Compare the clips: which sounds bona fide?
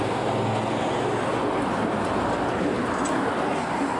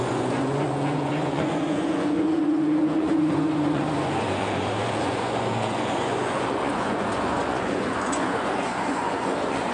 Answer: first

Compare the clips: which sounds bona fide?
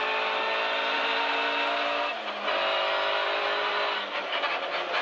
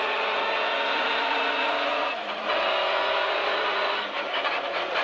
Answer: first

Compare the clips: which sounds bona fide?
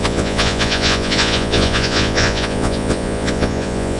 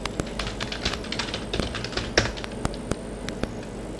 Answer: second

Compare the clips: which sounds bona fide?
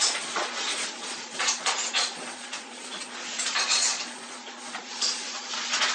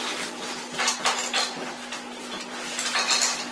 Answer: second